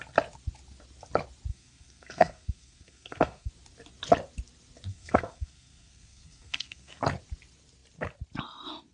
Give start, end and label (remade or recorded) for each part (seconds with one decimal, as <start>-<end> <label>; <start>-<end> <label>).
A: 0.0-1.5 recorded; 1.5-3.5 remade; 3.5-4.9 recorded; 4.9-7.0 remade; 7.0-8.9 recorded

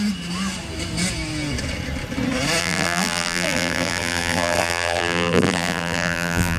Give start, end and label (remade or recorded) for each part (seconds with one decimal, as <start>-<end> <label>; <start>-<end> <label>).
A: 0.0-2.6 recorded; 2.6-6.6 remade

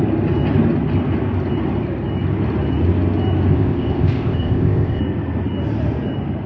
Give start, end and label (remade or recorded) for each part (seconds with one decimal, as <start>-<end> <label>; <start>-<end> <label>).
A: 0.0-3.5 recorded; 3.5-5.0 remade; 5.0-6.5 recorded

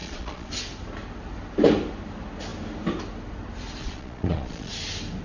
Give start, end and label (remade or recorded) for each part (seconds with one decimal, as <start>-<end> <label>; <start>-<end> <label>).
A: 0.0-0.5 remade; 0.5-3.8 recorded; 3.8-4.7 remade; 4.7-5.2 recorded

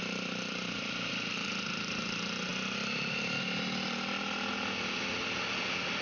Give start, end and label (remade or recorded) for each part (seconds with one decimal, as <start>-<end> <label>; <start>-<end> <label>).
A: 0.0-6.0 recorded